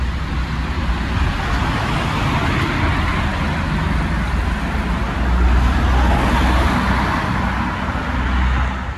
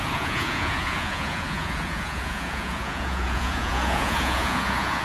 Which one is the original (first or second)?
first